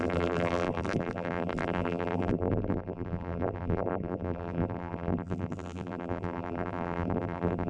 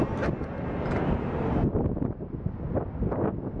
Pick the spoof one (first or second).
first